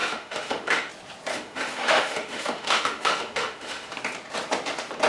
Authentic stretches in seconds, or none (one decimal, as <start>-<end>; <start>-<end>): 0.9-1.3; 3.9-5.1